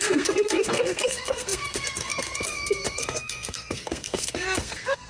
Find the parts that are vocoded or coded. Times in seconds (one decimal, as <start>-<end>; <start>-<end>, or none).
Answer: 0.0-5.1